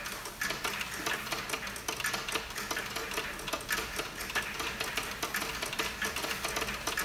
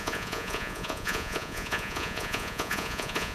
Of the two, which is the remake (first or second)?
second